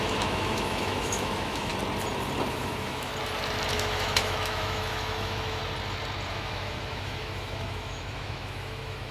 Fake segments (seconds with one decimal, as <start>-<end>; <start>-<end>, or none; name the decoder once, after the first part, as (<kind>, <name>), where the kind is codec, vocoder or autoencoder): 0.0-1.7 (autoencoder, DAC-VAE); 2.5-3.1; 3.7-5.6; 6.3-9.1